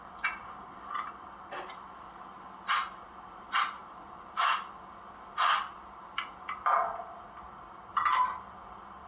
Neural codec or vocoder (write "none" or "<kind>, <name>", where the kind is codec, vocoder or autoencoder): none